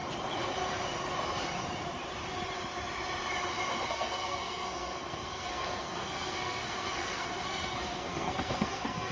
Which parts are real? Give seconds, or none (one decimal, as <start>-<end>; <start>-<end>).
0.0-3.9